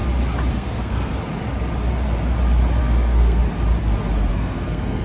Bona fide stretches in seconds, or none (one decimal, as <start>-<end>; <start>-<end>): 0.0-0.5; 1.1-2.8; 3.4-4.3